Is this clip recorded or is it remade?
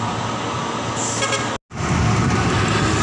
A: recorded